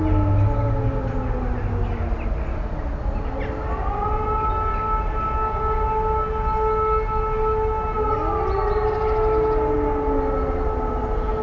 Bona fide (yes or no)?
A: yes